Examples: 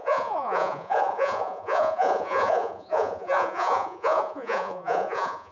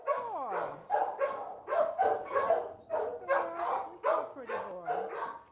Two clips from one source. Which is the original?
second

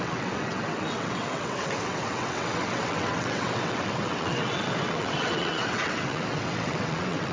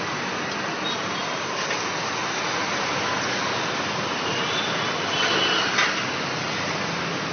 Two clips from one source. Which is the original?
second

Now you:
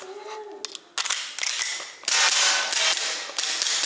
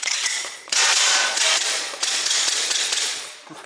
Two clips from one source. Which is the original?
first